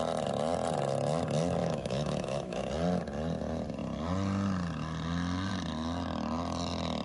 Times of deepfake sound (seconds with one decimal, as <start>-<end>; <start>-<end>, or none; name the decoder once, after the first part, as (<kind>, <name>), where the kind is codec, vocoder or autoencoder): 1.6-2.7 (autoencoder, DAC-VAE)

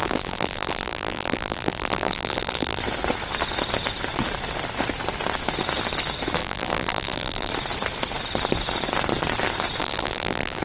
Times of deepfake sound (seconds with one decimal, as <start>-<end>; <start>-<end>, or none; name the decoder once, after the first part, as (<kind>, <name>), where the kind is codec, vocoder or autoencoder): 0.0-2.8 (vocoder, BigVGAN v2); 6.4-7.5; 9.8-10.6

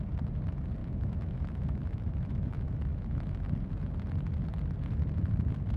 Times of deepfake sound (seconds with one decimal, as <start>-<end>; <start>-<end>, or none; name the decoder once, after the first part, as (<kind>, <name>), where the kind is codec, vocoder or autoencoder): 0.8-3.3 (autoencoder, DAC-VAE)

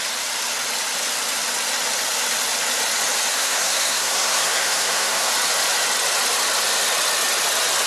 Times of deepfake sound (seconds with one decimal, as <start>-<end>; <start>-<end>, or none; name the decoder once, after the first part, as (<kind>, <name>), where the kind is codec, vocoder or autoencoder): 3.3-5.3 (codec, SNAC)

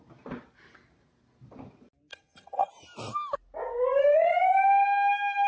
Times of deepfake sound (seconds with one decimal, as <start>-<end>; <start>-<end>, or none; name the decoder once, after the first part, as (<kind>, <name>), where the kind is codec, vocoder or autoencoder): 2.1-2.7 (vocoder, HiFi-GAN)

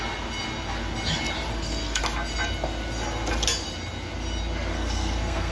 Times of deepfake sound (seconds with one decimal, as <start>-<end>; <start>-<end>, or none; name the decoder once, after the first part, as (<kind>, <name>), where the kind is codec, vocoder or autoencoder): 1.5-2.0 (codec, SNAC); 4.7-5.5

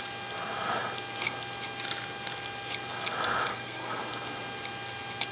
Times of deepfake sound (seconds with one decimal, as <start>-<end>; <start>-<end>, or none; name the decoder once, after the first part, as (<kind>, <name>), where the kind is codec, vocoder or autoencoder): 3.5-4.0 (codec, SNAC)

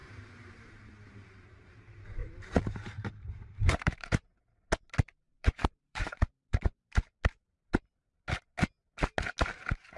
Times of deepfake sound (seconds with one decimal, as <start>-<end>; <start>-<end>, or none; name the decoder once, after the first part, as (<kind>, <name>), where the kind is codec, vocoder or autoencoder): 0.0-0.7 (vocoder, BigVGAN v2); 2.2-4.5; 5.3-6.9